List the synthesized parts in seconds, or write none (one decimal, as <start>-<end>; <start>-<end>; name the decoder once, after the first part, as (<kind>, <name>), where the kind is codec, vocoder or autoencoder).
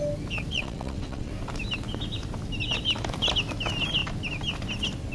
0.5-1.3 (vocoder, WaveNeXt)